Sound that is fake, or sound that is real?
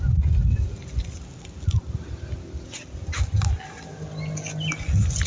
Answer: real